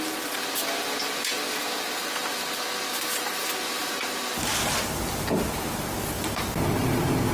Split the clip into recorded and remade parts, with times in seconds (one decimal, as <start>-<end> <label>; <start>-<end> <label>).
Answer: 0.0-3.8 recorded; 3.8-4.3 remade; 4.3-7.3 recorded